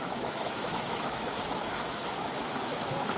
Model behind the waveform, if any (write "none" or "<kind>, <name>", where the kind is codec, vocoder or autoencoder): autoencoder, DAC-VAE